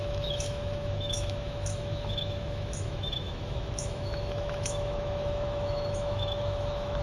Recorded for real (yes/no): no